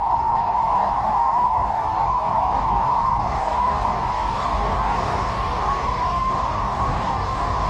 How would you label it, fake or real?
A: fake